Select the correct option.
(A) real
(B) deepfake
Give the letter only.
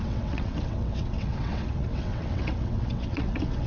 B